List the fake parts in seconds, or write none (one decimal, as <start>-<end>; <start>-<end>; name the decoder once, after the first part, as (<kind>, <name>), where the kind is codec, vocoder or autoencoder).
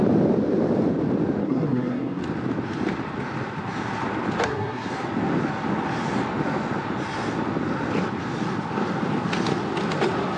1.4-2.2 (codec, SNAC); 4.4-4.9